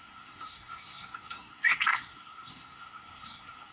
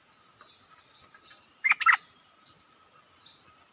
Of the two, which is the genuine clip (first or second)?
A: second